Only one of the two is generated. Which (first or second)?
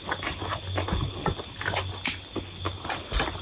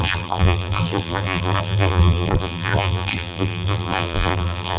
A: second